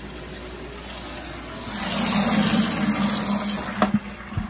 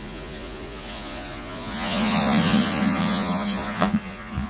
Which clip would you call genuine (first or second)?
first